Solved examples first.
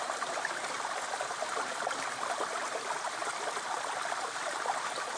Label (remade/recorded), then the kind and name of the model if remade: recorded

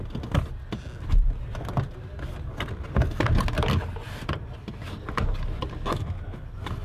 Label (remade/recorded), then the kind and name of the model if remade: recorded